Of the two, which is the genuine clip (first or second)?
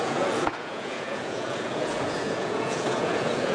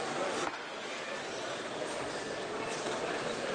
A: second